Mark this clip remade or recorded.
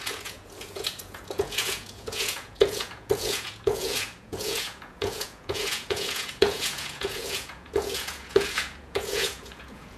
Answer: remade